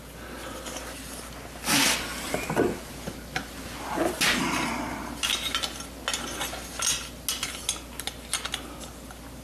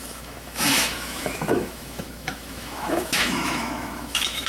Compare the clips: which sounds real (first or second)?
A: first